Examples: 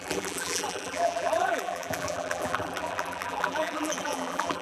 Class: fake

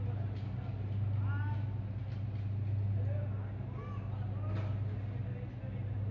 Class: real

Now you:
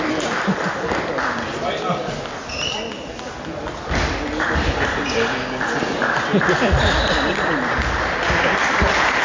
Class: real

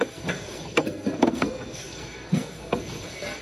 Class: fake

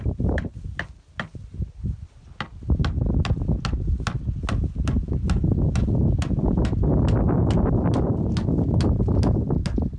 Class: real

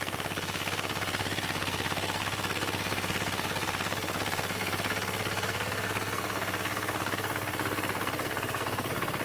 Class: fake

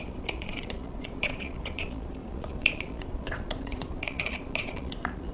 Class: fake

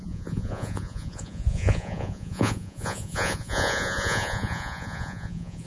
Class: fake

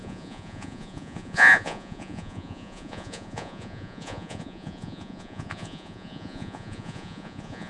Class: fake